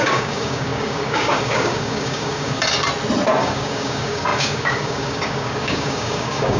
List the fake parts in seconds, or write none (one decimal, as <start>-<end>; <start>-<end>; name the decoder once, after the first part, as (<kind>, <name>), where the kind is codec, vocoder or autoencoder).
0.0-2.6 (codec, DAC); 3.4-6.6